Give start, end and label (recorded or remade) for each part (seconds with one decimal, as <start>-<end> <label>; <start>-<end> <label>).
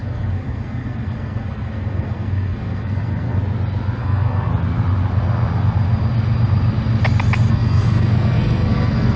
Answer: 0.0-3.4 remade; 3.4-4.0 recorded; 4.0-4.5 remade; 4.5-7.5 recorded; 7.5-9.2 remade